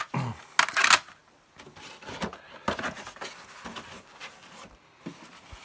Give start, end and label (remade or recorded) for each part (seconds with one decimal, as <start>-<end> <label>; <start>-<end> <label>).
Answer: 0.0-5.6 recorded